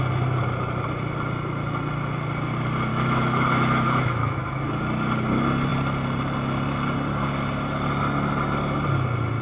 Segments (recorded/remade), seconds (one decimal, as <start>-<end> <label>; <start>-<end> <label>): 0.0-2.9 recorded; 2.9-4.8 remade; 4.8-9.4 recorded